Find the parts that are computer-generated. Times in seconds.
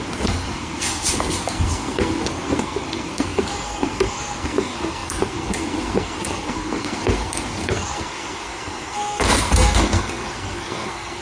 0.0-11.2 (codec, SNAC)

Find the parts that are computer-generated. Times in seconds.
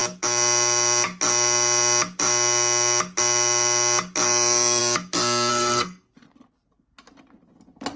5.5-6.1 (codec, SNAC)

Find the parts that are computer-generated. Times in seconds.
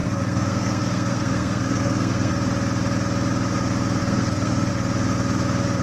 0.0-2.3 (codec, SNAC); 4.0-4.7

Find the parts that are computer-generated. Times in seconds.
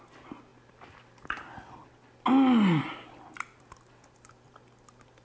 none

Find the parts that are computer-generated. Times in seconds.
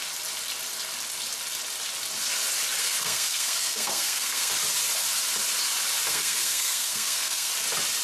2.8-4.5 (codec, SNAC); 6.1-7.5